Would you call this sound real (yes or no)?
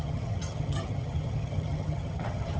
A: no